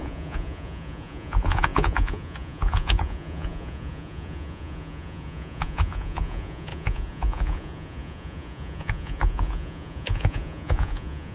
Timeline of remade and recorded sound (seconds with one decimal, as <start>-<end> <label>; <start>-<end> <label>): 0.0-11.3 remade